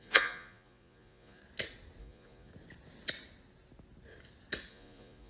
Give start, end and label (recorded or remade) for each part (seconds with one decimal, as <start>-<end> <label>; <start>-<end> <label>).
0.0-1.4 remade; 1.4-2.0 recorded; 2.0-2.5 remade; 2.5-4.7 recorded; 4.7-5.3 remade